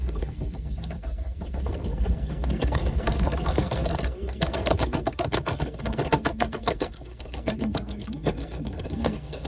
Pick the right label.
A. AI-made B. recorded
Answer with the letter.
A